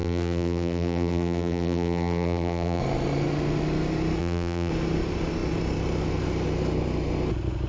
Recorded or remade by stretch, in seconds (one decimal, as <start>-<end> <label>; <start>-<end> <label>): 0.0-2.8 remade; 2.8-4.2 recorded; 4.2-4.7 remade; 4.7-7.7 recorded